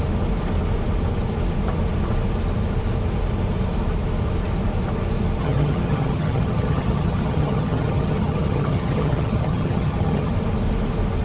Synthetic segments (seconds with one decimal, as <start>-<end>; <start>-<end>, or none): 5.4-10.3